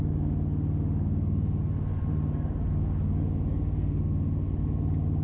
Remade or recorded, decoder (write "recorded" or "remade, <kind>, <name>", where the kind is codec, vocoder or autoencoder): recorded